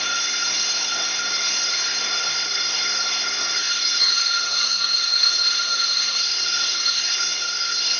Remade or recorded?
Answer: remade